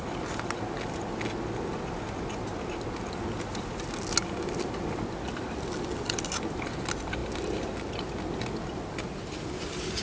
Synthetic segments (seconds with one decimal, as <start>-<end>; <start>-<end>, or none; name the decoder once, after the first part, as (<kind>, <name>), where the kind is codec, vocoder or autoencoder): none